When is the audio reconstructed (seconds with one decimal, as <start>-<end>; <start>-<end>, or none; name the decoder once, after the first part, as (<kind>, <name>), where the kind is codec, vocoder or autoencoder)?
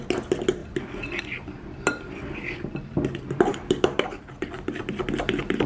0.6-1.2 (vocoder, BigVGAN v2)